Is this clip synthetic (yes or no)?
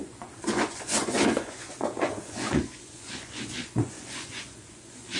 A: yes